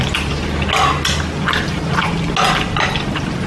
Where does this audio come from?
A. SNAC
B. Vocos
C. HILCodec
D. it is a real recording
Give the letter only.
D